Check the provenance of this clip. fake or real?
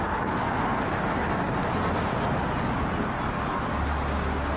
real